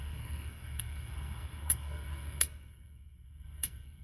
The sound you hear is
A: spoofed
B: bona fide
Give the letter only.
A